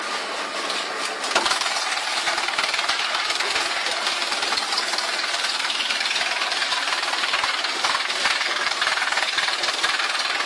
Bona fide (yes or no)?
no